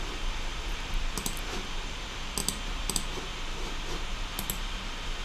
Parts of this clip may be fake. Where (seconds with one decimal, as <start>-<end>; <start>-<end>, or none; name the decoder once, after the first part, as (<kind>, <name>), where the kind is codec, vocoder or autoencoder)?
none